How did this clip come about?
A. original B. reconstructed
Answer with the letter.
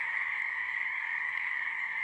B